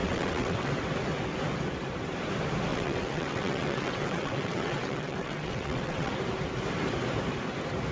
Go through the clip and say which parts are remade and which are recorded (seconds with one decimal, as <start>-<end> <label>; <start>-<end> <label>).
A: 0.0-0.7 remade; 0.7-2.7 recorded; 2.7-6.1 remade; 6.1-7.9 recorded